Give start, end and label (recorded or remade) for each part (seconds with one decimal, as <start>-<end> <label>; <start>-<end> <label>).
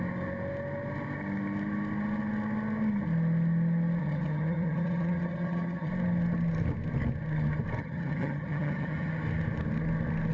0.0-4.0 recorded; 4.0-5.9 remade; 5.9-7.8 recorded; 7.8-9.1 remade; 9.1-10.3 recorded